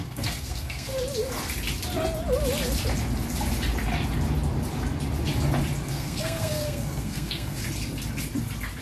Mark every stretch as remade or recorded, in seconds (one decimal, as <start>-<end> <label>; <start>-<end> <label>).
0.0-0.9 remade; 0.9-5.9 recorded; 5.9-7.6 remade; 7.6-8.8 recorded